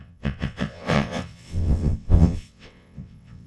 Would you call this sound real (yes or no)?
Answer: no